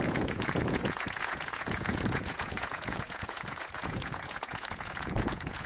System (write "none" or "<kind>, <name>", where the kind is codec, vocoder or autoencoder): vocoder, Vocos